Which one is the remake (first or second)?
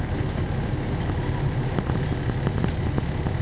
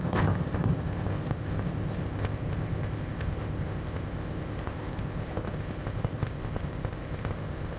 second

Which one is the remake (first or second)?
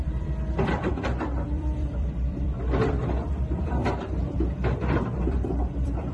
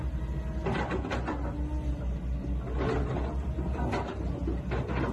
first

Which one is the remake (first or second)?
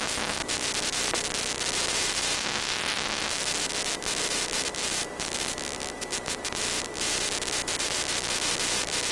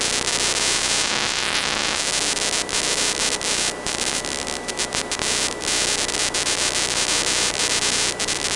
first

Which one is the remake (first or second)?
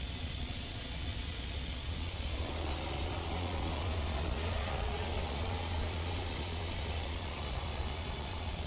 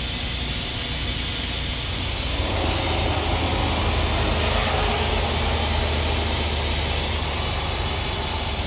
first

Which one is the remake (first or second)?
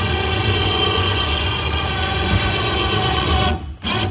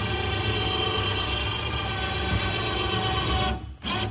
first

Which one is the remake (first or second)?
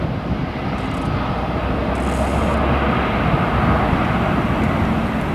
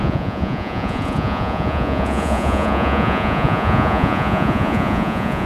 second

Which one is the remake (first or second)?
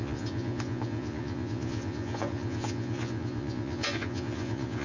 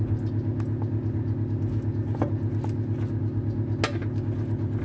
first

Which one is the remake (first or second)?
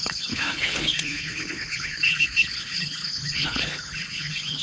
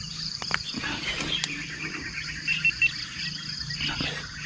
first